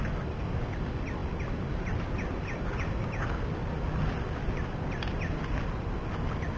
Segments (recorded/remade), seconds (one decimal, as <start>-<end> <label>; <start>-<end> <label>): 0.0-6.6 recorded